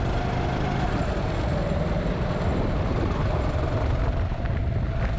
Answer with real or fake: real